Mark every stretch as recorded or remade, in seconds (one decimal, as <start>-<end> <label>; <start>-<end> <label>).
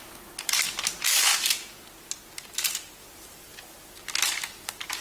0.0-1.3 remade; 1.3-3.0 recorded; 3.0-5.0 remade